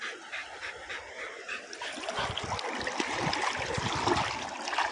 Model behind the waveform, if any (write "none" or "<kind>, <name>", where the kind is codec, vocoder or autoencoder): none